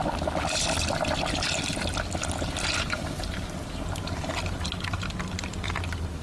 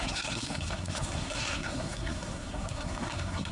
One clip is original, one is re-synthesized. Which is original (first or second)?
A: first